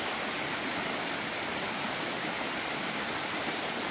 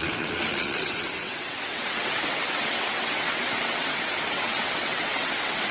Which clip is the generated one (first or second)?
second